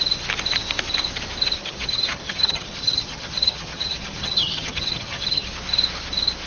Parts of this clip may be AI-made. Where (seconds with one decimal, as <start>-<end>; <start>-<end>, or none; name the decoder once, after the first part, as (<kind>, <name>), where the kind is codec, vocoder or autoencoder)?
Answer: 1.6-5.5 (vocoder, HiFi-GAN)